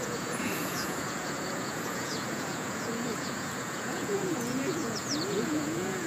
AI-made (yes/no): yes